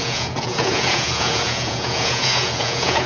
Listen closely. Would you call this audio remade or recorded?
remade